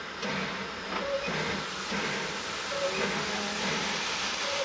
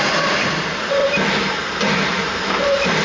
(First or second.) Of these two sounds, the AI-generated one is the second